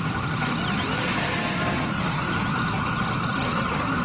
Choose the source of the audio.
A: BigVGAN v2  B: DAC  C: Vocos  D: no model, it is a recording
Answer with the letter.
D